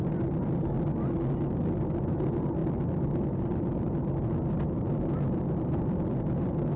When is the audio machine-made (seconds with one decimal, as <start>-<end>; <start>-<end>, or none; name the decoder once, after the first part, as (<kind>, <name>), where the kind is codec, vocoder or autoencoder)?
none